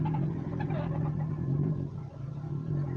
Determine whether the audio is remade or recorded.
recorded